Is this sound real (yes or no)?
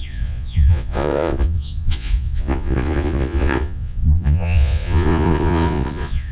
no